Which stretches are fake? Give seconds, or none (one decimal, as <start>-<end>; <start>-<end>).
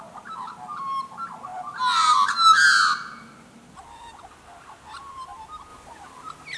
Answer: none